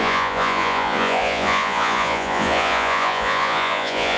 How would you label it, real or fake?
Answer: fake